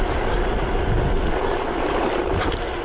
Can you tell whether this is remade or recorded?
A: recorded